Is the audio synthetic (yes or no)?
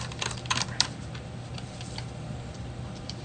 yes